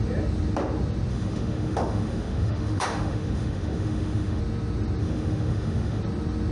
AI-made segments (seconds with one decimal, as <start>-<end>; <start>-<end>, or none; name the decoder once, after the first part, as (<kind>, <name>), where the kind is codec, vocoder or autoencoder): 1.1-4.4 (autoencoder, DAC-VAE); 5.0-6.0